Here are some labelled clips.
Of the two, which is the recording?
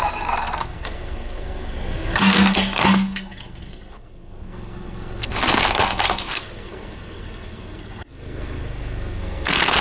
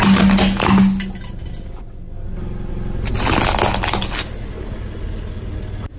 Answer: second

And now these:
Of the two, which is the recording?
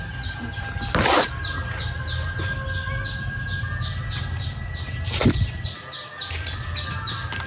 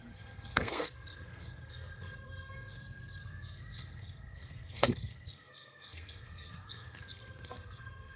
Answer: first